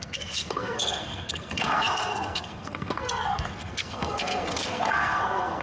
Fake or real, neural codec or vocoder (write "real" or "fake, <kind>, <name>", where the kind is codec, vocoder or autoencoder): fake, codec, SNAC